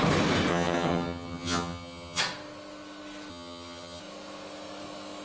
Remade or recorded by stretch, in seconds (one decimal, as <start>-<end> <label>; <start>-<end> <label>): 0.0-0.5 recorded; 0.5-2.2 remade; 2.2-3.3 recorded; 3.3-4.0 remade; 4.0-5.2 recorded